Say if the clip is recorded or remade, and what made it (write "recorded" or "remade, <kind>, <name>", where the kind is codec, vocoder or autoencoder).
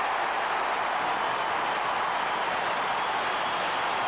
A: recorded